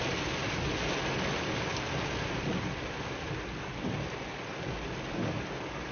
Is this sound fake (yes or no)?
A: no